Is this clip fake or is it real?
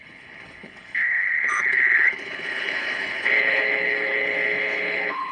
fake